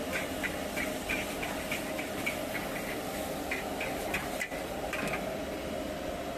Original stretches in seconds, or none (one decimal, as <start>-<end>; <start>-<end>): 0.0-6.4